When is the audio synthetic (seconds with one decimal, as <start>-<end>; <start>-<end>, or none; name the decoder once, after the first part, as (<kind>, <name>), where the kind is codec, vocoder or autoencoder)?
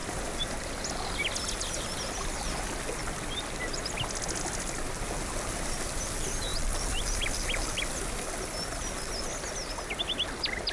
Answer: none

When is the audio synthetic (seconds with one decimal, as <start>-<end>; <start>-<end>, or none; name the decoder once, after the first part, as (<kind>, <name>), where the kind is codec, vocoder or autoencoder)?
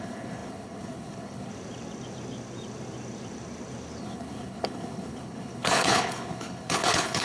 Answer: 0.0-1.5 (codec, HILCodec); 4.0-7.2